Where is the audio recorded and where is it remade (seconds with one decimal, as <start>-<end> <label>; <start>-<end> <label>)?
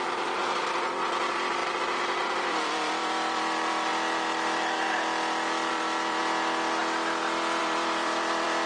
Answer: 0.0-1.6 remade; 1.6-2.2 recorded; 2.2-3.9 remade; 3.9-5.7 recorded; 5.7-6.2 remade; 6.2-7.6 recorded; 7.6-8.7 remade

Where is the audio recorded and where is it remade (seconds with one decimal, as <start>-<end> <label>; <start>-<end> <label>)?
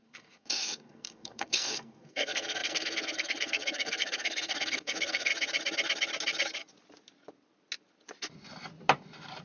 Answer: 0.0-5.3 remade; 5.3-9.4 recorded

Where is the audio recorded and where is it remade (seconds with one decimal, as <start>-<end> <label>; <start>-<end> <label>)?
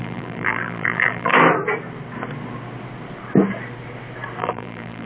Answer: 0.0-1.3 remade; 1.3-4.4 recorded; 4.4-5.1 remade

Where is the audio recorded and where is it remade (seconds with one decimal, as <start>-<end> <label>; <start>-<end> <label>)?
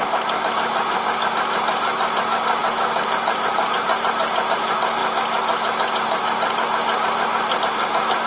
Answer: 0.0-8.3 recorded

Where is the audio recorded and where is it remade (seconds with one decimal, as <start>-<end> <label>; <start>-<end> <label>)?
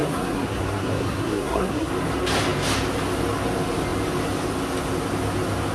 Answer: 0.0-1.9 remade; 1.9-5.7 recorded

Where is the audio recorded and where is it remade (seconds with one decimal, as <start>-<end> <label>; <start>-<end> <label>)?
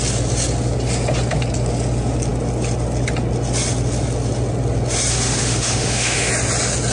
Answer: 0.0-5.1 recorded; 5.1-6.3 remade; 6.3-6.9 recorded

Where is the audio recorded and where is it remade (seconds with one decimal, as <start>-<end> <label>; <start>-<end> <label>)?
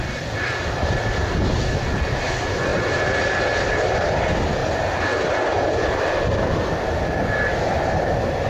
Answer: 0.0-2.7 remade; 2.7-3.6 recorded; 3.6-4.6 remade; 4.6-5.7 recorded; 5.7-8.5 remade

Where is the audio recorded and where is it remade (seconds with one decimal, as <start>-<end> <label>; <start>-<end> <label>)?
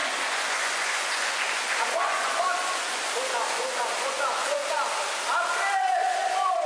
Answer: 0.0-4.6 remade; 4.6-5.8 recorded; 5.8-6.7 remade